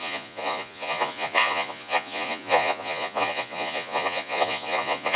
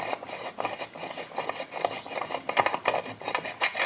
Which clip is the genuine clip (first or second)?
second